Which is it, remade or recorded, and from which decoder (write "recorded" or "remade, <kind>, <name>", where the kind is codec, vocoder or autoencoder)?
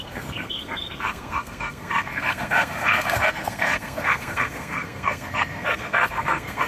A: remade, codec, SNAC